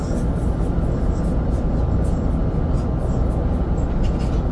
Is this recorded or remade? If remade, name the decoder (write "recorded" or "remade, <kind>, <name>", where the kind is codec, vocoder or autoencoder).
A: recorded